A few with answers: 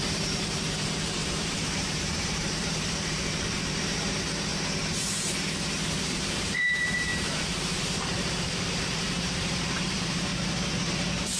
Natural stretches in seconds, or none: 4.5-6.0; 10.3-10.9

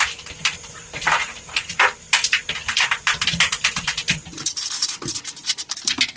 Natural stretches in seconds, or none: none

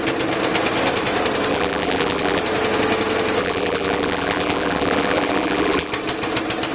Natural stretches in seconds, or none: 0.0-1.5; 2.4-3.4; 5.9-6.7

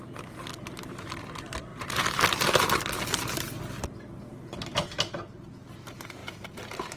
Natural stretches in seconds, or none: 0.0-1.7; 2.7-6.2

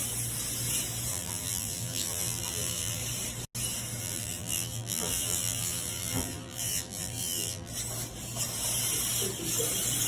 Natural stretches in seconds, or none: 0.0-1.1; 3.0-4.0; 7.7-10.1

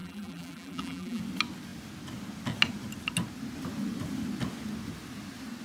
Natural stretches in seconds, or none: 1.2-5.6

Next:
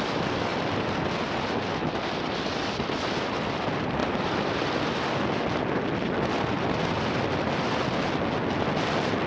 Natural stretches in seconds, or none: 0.0-0.5; 1.1-4.0; 5.3-9.3

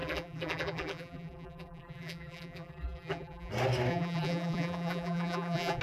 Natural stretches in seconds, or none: 3.5-3.9